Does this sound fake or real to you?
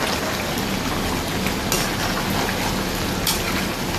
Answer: real